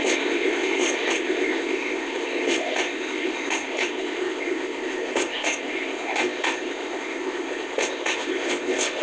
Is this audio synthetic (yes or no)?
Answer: yes